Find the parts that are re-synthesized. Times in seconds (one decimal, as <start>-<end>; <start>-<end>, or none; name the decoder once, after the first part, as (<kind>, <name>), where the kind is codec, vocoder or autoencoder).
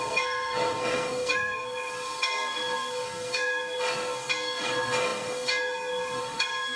0.0-6.8 (codec, SNAC)